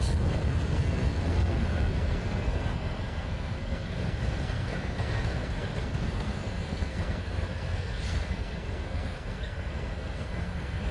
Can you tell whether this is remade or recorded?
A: remade